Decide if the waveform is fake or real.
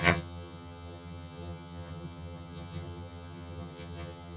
fake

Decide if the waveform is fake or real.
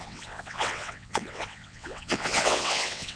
fake